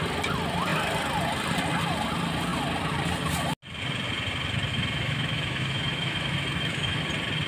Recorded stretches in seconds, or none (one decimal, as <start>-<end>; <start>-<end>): 0.0-4.7; 7.0-7.5